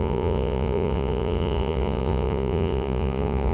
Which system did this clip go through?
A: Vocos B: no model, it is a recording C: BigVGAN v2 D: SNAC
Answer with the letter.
A